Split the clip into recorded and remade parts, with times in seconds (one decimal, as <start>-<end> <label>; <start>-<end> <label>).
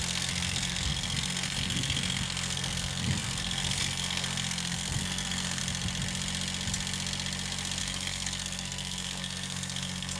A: 0.0-5.6 remade; 5.6-7.8 recorded; 7.8-10.2 remade